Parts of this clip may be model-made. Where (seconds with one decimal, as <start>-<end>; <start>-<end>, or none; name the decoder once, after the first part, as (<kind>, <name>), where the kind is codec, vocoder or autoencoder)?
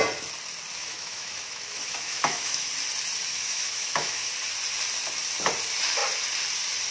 0.8-2.7 (autoencoder, DAC-VAE); 3.3-4.3